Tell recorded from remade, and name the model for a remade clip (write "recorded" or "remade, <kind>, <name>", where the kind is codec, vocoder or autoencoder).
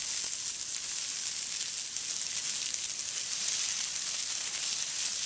recorded